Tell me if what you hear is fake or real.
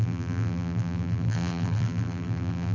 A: fake